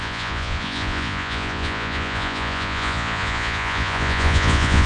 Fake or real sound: fake